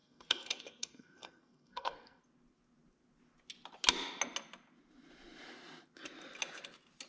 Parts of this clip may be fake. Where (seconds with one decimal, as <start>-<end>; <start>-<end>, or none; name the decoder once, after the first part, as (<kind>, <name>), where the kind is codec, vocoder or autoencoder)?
0.0-2.2 (codec, SNAC)